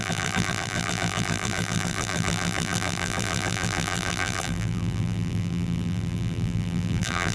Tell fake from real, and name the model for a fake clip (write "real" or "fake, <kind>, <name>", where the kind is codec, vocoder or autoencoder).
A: fake, vocoder, BigVGAN v2